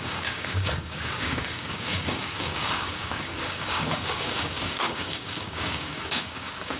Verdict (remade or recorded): remade